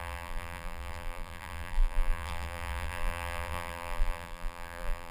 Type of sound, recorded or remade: remade